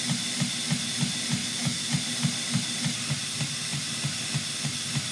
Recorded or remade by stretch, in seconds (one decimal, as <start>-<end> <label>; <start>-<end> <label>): 0.0-1.4 recorded; 1.4-1.9 remade; 1.9-5.1 recorded